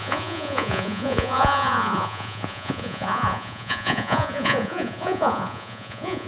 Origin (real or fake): fake